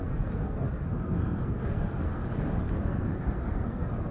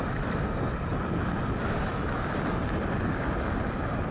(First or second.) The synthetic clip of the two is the first